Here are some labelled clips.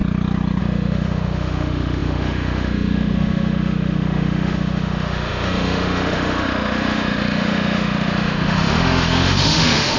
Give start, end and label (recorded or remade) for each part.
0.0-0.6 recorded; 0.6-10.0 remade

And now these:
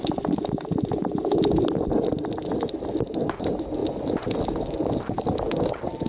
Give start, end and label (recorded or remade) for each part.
0.0-6.1 recorded

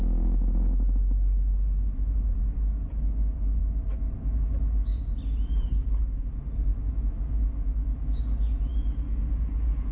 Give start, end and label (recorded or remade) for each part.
0.0-3.6 recorded; 3.6-5.0 remade; 5.0-6.7 recorded; 6.7-8.2 remade; 8.2-9.9 recorded

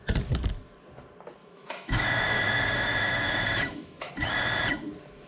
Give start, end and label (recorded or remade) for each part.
0.0-1.4 recorded; 1.4-4.1 remade; 4.1-5.3 recorded

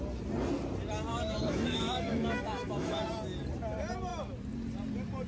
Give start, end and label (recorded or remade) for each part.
0.0-1.1 recorded; 1.1-3.0 remade; 3.0-5.3 recorded